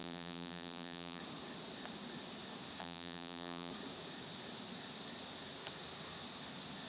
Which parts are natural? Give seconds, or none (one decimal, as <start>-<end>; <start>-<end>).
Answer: 1.2-2.8; 3.7-6.9